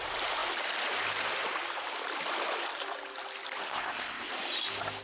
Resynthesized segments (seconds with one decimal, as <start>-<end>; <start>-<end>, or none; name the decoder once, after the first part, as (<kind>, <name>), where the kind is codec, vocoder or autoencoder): 3.7-4.3 (codec, ZipCodec)